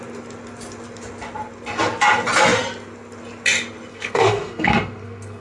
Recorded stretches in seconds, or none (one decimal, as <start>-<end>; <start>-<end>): 0.0-3.9